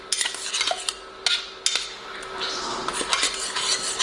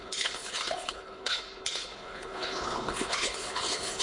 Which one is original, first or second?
first